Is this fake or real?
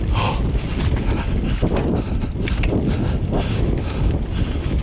real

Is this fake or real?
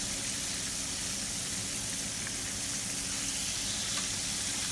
real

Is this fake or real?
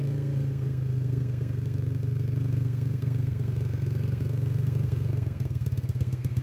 fake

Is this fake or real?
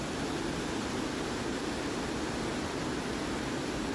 real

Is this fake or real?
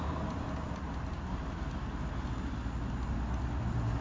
real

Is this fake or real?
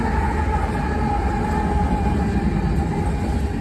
real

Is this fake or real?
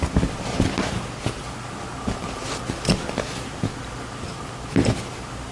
real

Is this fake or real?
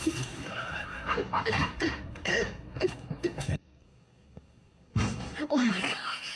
fake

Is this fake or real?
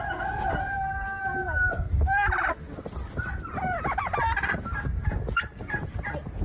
real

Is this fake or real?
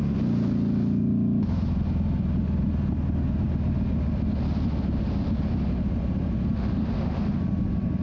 real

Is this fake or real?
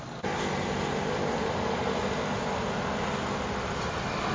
real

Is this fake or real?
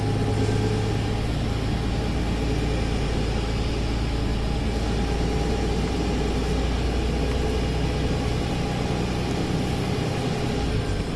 real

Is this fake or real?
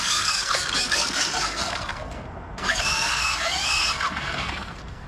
fake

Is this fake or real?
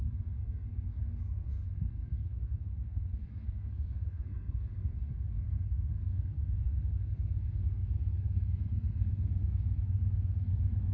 fake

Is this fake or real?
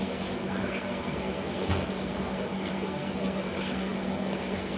fake